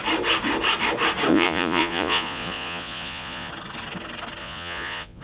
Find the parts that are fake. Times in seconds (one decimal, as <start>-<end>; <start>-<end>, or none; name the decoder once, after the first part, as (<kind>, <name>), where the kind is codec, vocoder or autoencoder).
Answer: 1.3-3.5 (vocoder, Vocos); 4.4-5.2